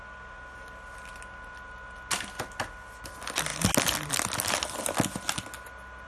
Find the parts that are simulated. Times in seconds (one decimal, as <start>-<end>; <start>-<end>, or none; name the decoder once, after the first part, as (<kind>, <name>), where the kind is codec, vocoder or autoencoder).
none